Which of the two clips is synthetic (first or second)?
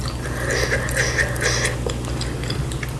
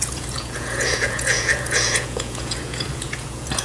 second